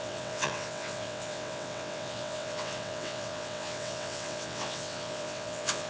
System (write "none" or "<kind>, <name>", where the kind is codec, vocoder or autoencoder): vocoder, WaveNeXt